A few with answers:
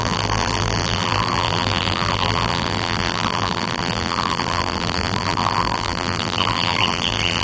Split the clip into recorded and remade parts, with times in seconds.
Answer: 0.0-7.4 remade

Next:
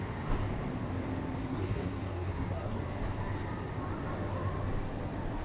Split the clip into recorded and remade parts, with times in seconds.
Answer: 0.0-1.4 recorded; 1.4-2.8 remade; 2.8-5.4 recorded

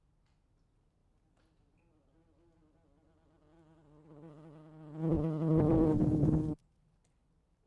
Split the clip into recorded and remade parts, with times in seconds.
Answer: 0.0-7.7 recorded